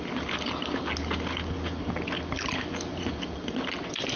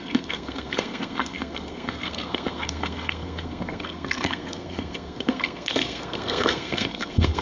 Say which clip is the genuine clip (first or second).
first